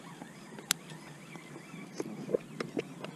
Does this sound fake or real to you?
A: real